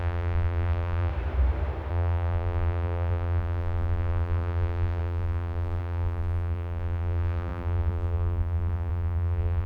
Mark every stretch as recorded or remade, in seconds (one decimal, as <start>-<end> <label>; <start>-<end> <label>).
0.0-1.1 remade; 1.1-1.9 recorded; 1.9-9.7 remade